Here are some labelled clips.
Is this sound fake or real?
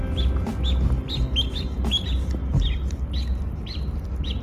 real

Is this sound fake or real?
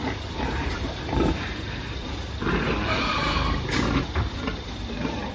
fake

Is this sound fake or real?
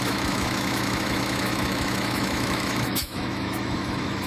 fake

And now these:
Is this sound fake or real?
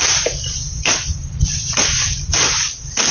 real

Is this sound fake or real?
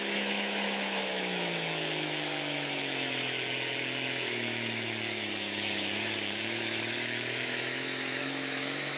fake